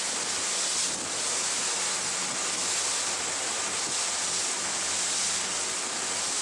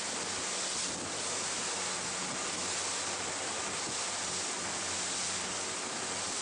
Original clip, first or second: first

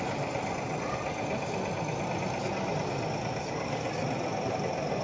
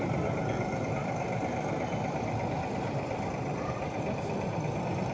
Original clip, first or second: first